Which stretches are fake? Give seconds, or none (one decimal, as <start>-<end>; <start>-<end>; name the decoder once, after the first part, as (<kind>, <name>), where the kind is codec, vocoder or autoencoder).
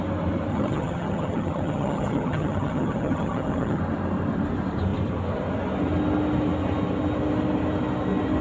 0.5-3.8 (vocoder, HiFi-GAN)